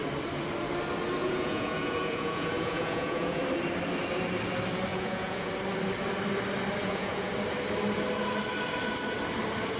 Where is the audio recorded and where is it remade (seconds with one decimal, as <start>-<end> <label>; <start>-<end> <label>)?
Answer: 0.0-1.2 recorded; 1.2-3.4 remade; 3.4-4.9 recorded; 4.9-5.5 remade; 5.5-6.8 recorded; 6.8-7.3 remade; 7.3-9.8 recorded